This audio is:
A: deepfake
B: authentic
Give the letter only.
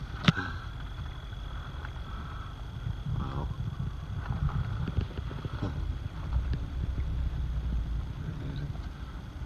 A